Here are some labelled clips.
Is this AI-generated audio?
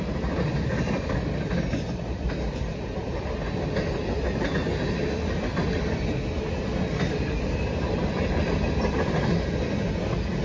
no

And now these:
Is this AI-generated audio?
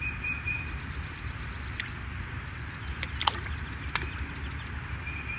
no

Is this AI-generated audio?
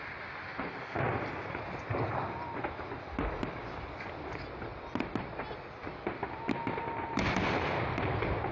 no